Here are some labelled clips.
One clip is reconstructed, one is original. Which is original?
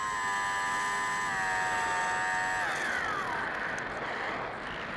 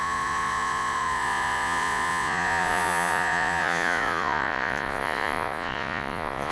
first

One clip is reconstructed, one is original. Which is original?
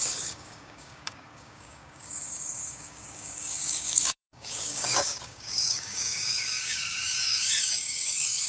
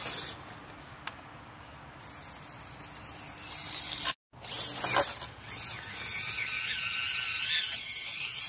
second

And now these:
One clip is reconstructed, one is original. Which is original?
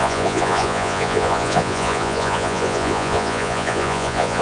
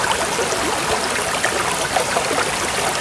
second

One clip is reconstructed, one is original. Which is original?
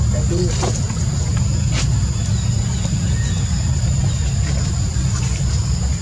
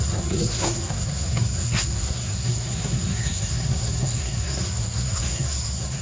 first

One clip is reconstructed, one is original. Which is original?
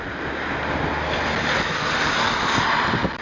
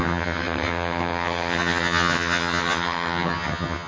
first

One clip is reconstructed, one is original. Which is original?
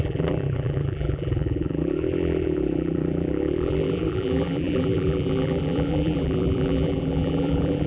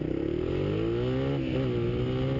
second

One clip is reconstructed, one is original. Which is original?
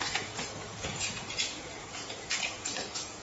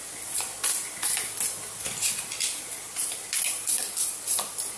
second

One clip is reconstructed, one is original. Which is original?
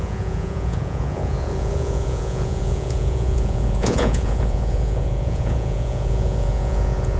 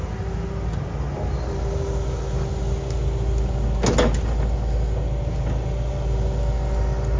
second